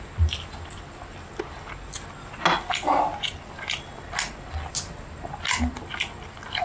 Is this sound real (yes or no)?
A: yes